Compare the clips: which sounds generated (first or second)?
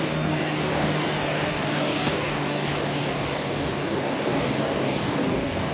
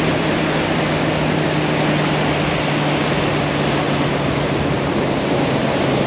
first